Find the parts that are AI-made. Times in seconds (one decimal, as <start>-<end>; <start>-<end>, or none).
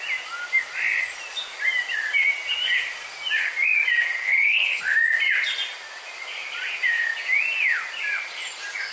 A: 4.2-4.8